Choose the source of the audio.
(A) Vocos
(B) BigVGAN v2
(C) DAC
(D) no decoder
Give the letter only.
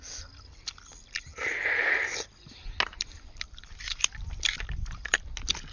D